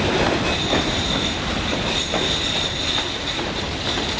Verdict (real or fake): real